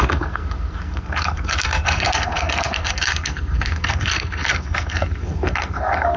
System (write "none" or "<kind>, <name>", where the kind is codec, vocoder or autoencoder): codec, SNAC